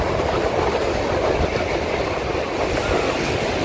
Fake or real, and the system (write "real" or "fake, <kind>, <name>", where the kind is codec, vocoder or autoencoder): real